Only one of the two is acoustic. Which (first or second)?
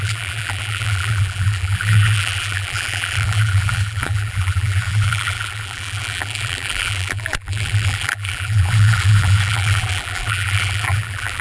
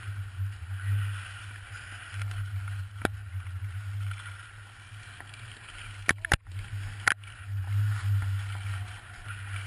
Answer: second